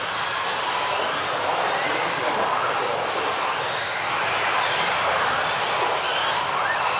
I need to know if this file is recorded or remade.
recorded